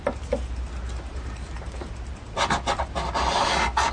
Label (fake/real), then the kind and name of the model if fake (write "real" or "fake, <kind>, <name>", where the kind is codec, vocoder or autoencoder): fake, vocoder, BigVGAN v2